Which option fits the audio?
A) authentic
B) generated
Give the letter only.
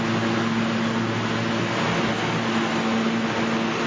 A